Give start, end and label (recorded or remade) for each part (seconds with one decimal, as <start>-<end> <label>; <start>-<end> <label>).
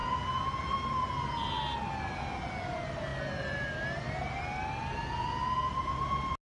0.0-6.6 recorded